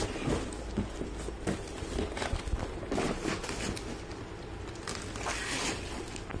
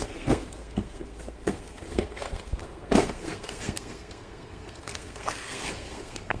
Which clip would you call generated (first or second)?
second